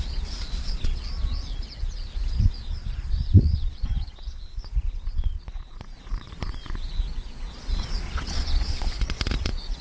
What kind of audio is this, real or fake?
fake